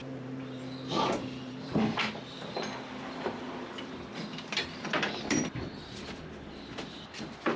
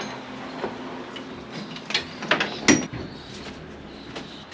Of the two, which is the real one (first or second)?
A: second